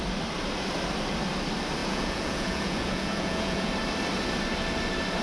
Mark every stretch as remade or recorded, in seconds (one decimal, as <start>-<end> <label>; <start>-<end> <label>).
0.0-1.8 recorded; 1.8-3.7 remade; 3.7-5.2 recorded